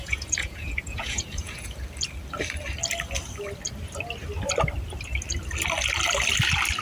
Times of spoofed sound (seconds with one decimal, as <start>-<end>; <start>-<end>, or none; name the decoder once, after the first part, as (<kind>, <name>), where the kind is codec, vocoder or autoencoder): 0.0-1.8 (vocoder, Vocos)

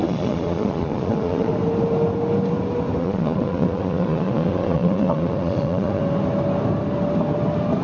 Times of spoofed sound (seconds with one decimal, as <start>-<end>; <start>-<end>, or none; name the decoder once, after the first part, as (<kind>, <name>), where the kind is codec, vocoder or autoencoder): 0.0-1.5 (vocoder, Vocos); 3.0-6.0

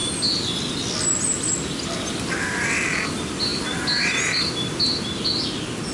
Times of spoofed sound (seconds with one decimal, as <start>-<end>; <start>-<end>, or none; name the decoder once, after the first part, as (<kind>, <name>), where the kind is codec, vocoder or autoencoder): none

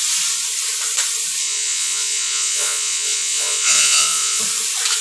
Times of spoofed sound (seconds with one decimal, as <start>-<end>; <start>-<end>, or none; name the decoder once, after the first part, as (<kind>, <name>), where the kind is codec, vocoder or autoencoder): 1.4-4.4 (vocoder, Vocos)

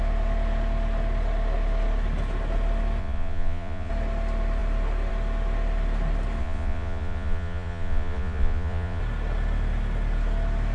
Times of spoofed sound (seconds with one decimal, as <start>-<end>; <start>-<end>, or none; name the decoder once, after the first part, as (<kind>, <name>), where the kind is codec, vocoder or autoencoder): 3.0-3.9 (vocoder, Vocos); 6.4-9.0

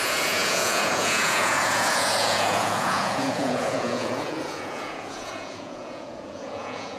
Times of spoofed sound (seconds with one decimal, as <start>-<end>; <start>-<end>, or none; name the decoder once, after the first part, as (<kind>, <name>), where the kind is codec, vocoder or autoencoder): 0.0-7.0 (vocoder, Vocos)

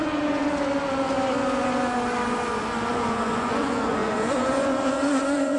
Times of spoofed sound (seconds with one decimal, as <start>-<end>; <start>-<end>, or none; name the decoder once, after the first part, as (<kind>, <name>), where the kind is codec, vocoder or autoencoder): 0.0-0.4 (vocoder, Vocos); 2.9-5.6